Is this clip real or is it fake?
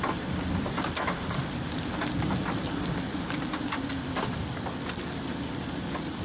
real